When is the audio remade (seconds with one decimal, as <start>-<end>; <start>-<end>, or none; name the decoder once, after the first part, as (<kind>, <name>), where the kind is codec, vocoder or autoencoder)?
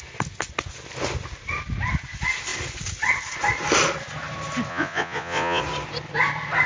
4.7-5.6 (vocoder, Vocos)